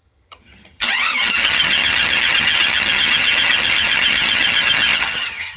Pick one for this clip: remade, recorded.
remade